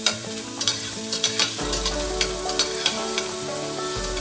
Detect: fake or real fake